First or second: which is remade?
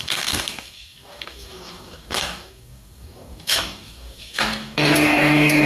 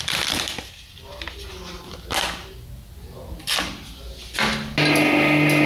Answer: first